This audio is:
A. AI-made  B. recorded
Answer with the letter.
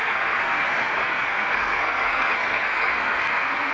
A